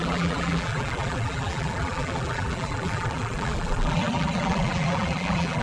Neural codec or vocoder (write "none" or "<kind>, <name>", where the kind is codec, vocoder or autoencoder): vocoder, BigVGAN v2